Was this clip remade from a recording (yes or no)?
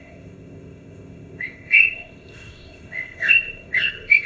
yes